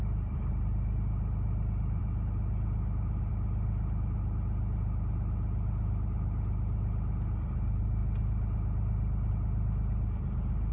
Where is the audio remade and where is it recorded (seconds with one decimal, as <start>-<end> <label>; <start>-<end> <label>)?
0.0-10.7 recorded